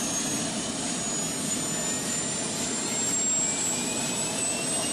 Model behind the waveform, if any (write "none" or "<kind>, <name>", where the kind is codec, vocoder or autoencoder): none